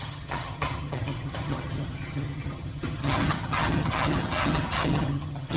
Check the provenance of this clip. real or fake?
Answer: fake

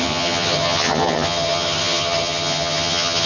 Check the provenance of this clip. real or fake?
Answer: fake